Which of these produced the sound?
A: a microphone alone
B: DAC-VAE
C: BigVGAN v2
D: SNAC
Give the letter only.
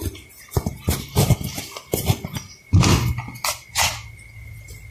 A